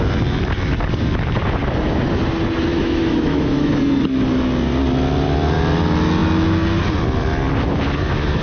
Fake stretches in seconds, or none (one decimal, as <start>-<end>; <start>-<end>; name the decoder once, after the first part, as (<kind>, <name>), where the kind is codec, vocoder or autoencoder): 2.7-3.7 (autoencoder, DAC-VAE)